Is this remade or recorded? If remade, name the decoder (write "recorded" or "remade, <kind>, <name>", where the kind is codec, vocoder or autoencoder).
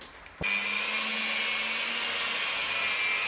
recorded